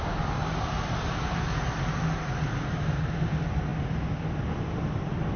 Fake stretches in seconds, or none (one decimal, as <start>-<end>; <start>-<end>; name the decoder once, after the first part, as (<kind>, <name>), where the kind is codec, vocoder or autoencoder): none